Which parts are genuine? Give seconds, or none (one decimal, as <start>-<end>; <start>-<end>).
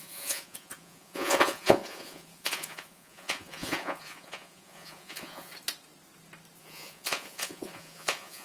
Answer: 5.5-6.6